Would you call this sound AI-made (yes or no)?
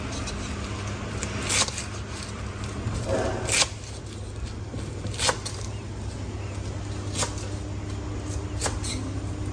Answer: no